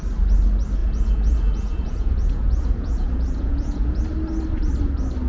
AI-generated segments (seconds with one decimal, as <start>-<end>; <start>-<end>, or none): 0.8-4.0